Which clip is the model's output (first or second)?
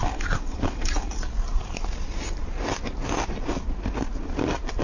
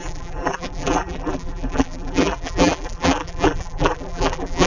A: second